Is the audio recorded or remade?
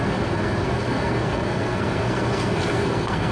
remade